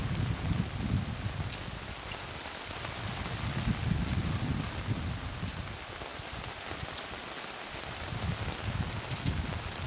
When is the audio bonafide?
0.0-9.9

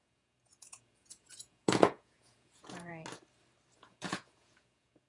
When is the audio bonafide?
2.9-3.8

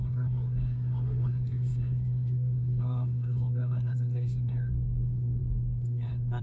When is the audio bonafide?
none

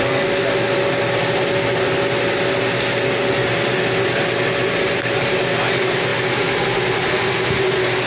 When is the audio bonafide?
0.0-8.1